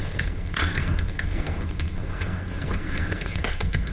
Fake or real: fake